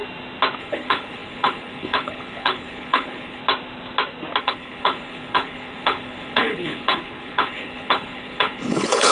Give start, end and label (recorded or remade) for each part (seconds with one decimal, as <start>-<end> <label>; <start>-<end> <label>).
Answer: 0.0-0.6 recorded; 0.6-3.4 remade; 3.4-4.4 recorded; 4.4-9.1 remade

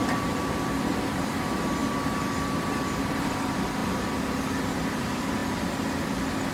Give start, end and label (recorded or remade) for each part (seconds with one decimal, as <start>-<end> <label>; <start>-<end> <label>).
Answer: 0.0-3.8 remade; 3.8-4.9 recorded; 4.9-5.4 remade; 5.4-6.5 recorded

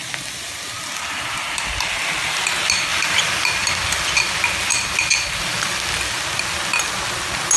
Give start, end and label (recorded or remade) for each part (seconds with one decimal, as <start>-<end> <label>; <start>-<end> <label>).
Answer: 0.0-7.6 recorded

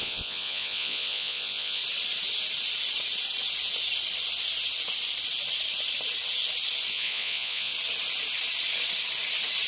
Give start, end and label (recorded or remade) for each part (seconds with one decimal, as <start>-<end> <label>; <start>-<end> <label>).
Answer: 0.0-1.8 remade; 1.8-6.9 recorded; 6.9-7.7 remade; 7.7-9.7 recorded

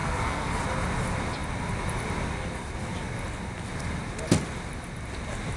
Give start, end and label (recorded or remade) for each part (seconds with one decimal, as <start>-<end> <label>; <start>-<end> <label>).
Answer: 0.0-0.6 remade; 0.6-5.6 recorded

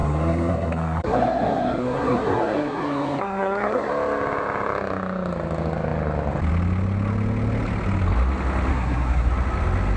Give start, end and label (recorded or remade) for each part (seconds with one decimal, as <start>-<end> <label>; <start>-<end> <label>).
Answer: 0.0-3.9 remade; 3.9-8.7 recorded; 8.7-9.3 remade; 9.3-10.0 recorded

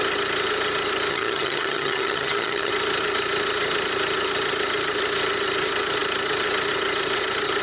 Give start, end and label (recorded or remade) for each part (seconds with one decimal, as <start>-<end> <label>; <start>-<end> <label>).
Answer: 0.0-1.1 recorded; 1.1-2.7 remade; 2.7-7.6 recorded